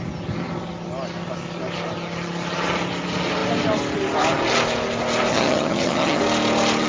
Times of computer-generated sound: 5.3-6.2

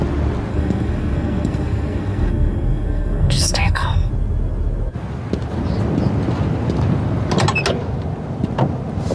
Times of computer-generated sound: 0.5-4.1

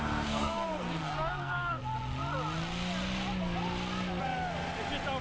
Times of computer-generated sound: 0.0-1.8

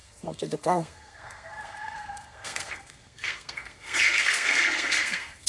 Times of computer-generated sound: 0.0-5.5